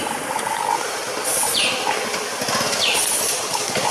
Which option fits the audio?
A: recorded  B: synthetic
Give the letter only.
A